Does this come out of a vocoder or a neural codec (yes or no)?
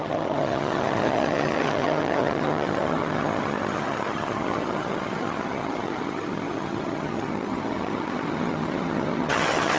yes